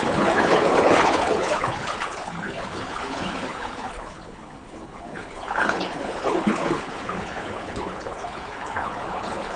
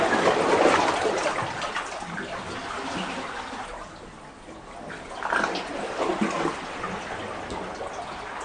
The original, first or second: second